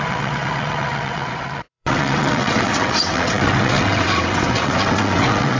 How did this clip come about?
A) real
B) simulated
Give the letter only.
B